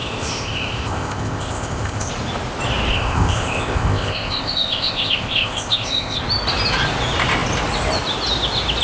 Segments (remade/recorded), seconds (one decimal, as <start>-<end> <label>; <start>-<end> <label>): 0.0-2.1 remade; 2.1-2.9 recorded; 2.9-6.2 remade; 6.2-8.8 recorded